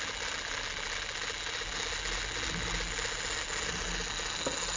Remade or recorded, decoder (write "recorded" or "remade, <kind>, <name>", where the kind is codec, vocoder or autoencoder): recorded